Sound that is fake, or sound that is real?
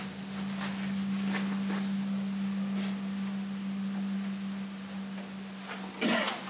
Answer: real